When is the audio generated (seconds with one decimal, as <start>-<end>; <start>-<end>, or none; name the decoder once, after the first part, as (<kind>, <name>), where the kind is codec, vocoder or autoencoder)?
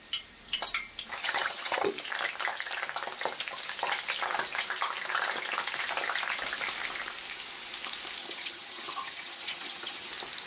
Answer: 1.2-1.9 (vocoder, HiFi-GAN); 8.2-10.1